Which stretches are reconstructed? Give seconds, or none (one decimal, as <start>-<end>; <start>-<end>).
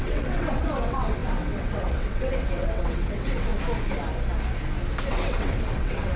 0.0-3.5; 5.1-6.2